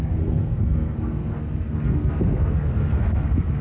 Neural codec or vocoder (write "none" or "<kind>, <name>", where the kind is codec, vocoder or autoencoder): codec, SNAC